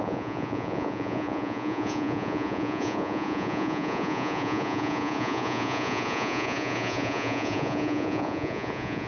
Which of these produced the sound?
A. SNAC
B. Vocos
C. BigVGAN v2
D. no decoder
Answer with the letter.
B